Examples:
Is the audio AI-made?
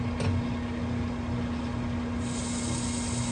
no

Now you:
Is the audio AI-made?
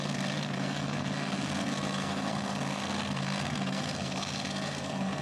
yes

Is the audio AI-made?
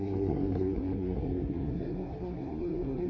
yes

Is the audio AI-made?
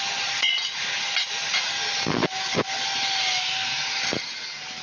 no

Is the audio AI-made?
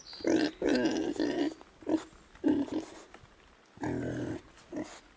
no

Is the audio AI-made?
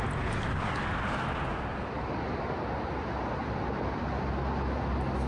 no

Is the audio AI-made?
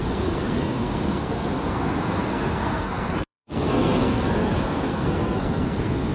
yes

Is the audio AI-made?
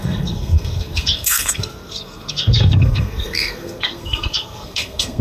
yes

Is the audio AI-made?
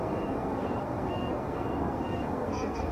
yes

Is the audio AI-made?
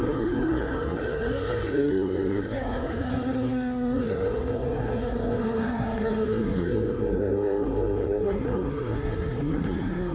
yes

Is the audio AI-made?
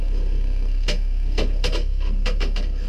yes